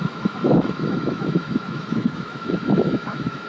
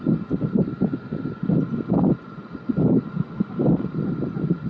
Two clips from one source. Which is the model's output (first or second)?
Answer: first